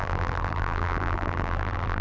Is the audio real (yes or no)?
no